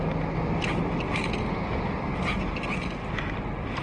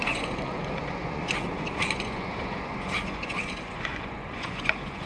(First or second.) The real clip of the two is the first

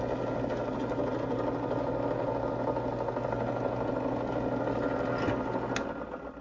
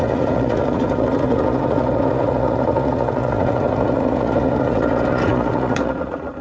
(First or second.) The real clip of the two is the first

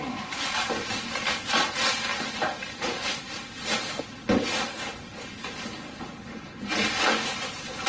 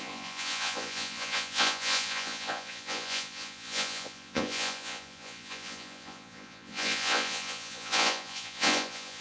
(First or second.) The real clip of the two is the first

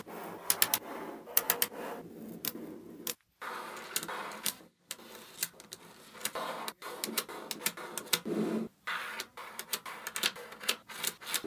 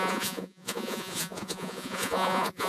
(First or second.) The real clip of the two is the first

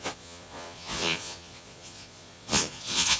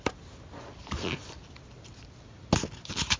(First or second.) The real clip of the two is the second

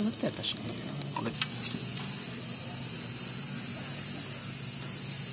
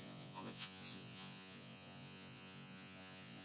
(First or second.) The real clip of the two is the first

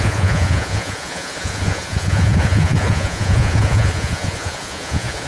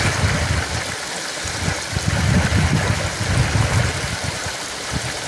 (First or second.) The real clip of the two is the second